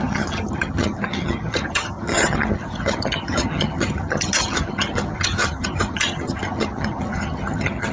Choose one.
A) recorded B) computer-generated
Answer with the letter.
B